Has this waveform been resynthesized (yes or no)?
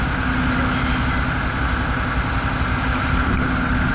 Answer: no